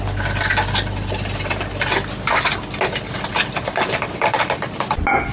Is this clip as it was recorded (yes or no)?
yes